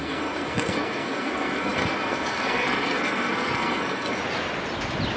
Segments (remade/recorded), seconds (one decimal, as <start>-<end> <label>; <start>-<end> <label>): 0.0-4.2 remade; 4.2-5.2 recorded